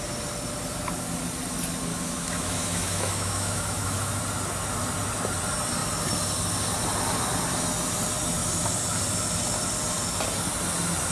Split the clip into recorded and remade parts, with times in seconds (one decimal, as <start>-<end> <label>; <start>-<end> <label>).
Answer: 0.0-1.9 recorded; 1.9-4.2 remade; 4.2-11.1 recorded